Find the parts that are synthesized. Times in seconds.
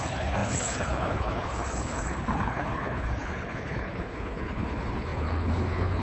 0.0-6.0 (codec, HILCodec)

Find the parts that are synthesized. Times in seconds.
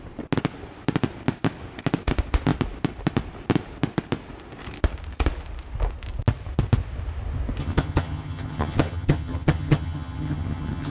7.6-10.9 (vocoder, HiFi-GAN)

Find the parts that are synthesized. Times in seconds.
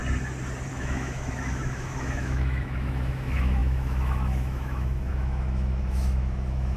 0.7-6.8 (autoencoder, DAC-VAE)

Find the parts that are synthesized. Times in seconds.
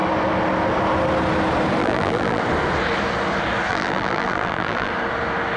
1.8-2.4 (vocoder, BigVGAN v2); 3.7-4.9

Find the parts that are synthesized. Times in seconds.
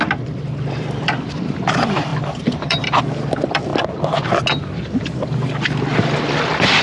0.0-3.7 (vocoder, BigVGAN v2); 6.0-6.8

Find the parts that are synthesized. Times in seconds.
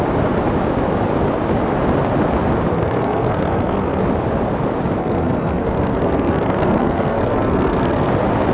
2.7-4.0 (codec, SNAC); 5.0-8.1